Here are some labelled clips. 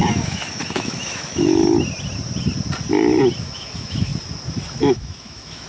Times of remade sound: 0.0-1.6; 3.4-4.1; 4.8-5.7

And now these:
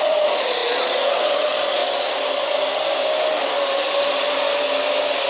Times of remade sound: 0.0-1.8

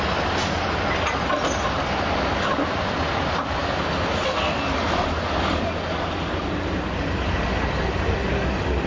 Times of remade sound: none

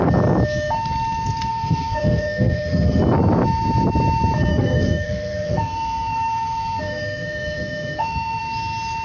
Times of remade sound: 1.5-3.0; 4.5-8.4

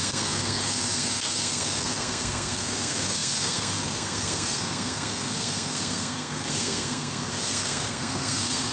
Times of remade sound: 0.0-8.7

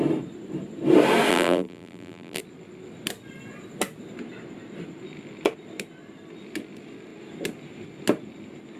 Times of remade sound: 1.3-2.4

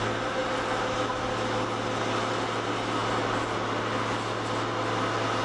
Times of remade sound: none